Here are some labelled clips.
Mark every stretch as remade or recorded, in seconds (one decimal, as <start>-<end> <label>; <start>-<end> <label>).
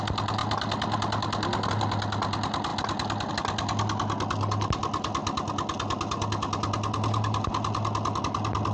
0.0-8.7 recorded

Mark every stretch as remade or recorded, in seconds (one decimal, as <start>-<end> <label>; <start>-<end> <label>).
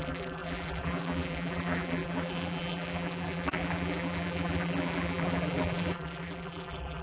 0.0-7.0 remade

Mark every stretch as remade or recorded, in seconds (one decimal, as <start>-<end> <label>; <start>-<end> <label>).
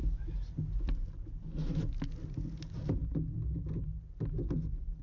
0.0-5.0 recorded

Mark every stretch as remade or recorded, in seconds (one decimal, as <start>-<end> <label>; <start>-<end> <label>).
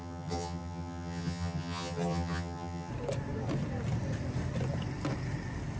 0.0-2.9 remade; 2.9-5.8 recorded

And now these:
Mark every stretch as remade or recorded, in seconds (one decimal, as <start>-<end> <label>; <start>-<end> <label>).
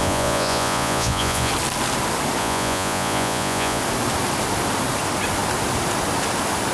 0.0-1.5 remade; 1.5-2.4 recorded; 2.4-3.8 remade; 3.8-6.7 recorded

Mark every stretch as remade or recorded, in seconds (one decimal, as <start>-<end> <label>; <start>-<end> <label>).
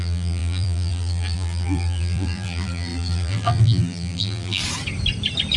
0.0-4.6 remade; 4.6-5.6 recorded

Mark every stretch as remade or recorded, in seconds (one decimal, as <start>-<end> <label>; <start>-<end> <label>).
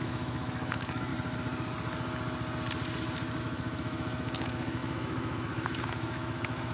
0.0-1.1 remade; 1.1-3.4 recorded; 3.4-6.7 remade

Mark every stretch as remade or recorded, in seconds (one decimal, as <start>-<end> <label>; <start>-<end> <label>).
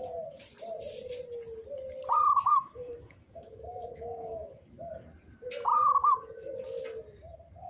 0.0-2.5 recorded; 2.5-4.9 remade; 4.9-5.7 recorded; 5.7-6.8 remade; 6.8-7.7 recorded